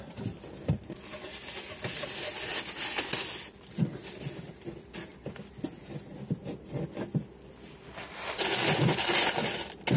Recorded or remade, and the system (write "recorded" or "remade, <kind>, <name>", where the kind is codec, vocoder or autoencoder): recorded